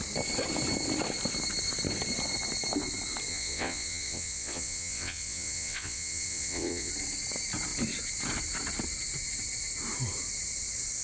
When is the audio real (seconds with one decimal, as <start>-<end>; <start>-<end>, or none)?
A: 0.0-3.3; 6.9-11.0